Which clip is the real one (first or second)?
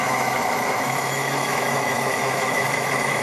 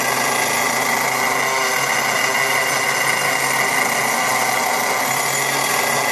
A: second